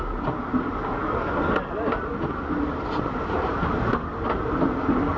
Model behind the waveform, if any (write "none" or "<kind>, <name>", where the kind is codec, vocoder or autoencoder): none